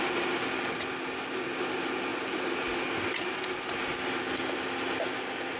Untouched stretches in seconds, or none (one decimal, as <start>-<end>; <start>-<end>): 0.0-5.6